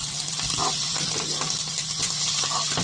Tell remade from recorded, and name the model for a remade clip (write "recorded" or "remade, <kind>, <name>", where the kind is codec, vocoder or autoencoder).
recorded